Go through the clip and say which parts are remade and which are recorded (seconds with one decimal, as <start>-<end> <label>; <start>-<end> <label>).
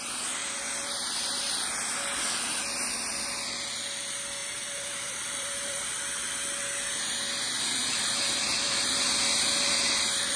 0.0-0.4 recorded; 0.4-1.4 remade; 1.4-4.4 recorded; 4.4-5.8 remade; 5.8-7.8 recorded; 7.8-10.4 remade